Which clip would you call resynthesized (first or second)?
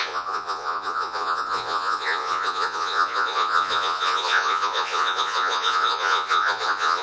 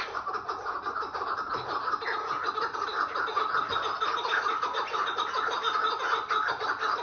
first